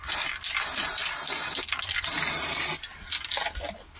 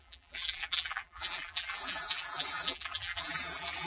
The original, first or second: first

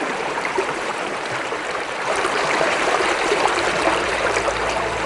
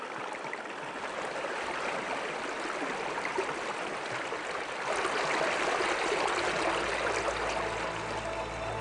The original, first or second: second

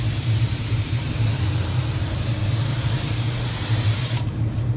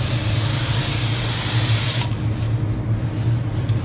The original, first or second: second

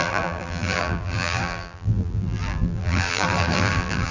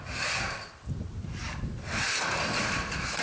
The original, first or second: second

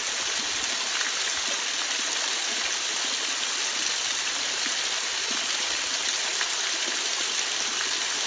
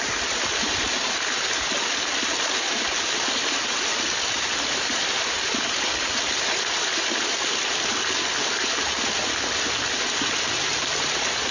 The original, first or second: first